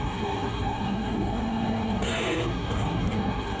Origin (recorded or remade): remade